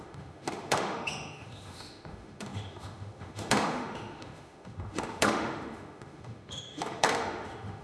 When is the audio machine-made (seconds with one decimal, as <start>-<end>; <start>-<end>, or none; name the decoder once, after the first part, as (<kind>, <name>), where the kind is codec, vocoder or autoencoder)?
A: 0.0-7.8 (autoencoder, DAC-VAE)